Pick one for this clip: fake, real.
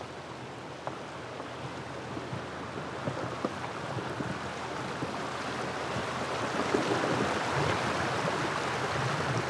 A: real